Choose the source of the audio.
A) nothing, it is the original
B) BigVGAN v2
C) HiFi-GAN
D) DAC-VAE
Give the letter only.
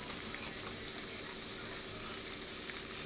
A